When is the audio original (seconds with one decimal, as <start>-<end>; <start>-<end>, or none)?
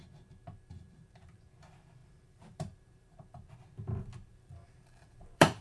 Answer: 0.0-0.4; 1.4-2.0; 3.5-4.3